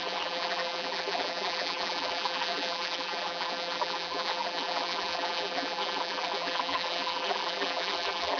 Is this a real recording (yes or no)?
no